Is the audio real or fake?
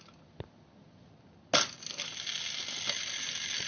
real